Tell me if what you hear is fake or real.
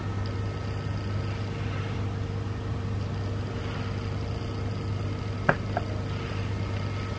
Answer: real